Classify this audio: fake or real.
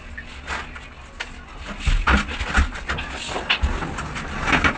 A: real